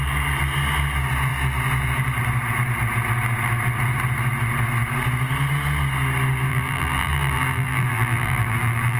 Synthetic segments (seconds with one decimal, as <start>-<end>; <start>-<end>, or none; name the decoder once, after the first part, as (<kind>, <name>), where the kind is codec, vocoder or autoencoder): 6.5-9.0 (vocoder, BigVGAN v2)